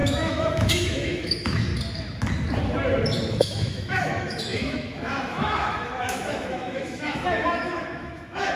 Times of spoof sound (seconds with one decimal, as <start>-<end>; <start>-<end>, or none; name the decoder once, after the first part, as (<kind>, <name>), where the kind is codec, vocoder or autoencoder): 0.0-1.7 (autoencoder, DAC-VAE); 3.3-8.6